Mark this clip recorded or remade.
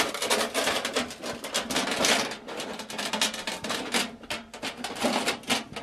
recorded